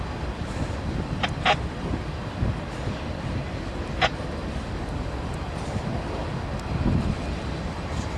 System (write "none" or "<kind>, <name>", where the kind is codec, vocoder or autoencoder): none